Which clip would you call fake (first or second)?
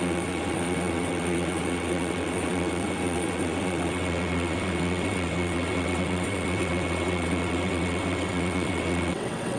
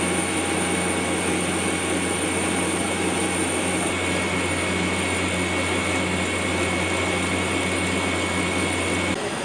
first